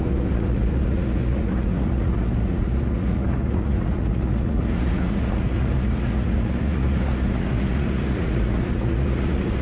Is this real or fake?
fake